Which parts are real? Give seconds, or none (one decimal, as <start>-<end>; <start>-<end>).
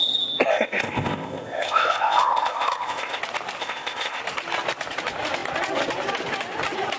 0.0-0.5; 3.2-3.6; 4.2-7.0